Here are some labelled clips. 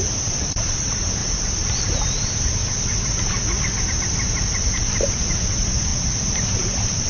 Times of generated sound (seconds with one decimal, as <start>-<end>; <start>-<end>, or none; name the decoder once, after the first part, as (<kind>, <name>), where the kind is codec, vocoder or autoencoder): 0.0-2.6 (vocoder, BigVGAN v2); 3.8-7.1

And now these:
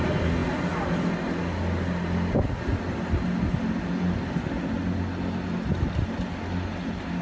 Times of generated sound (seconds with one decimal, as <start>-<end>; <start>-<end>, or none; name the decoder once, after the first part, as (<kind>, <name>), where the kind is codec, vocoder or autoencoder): none

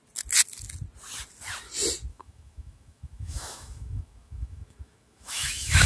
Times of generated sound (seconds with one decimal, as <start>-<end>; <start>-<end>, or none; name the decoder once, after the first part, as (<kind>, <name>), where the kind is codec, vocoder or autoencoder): 2.1-5.9 (autoencoder, DAC-VAE)